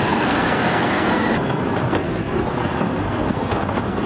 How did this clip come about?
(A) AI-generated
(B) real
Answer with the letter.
A